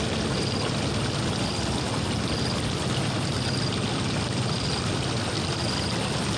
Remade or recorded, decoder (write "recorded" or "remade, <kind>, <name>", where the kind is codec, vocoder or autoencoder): recorded